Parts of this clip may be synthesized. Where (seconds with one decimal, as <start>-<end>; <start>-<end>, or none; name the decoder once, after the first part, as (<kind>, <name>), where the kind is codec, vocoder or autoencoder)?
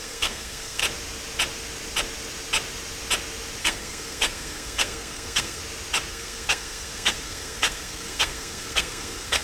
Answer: 0.0-0.8 (codec, SNAC); 3.6-5.6; 6.1-9.4